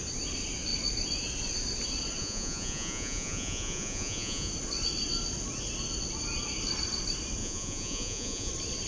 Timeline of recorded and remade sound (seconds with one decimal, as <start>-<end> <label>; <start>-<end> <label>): 0.0-2.2 recorded; 2.2-4.5 remade; 4.5-7.4 recorded; 7.4-8.5 remade; 8.5-8.9 recorded